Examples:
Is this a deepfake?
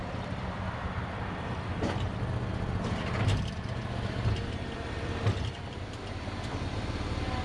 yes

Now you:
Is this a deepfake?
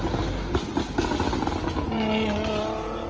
no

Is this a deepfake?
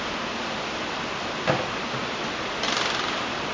no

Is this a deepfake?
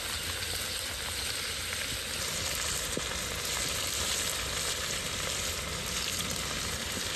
no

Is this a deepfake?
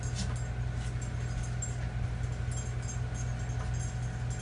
no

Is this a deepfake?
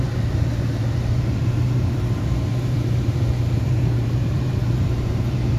yes